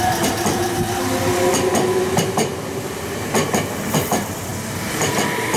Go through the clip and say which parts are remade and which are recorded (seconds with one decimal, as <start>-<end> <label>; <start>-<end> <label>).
0.0-5.6 recorded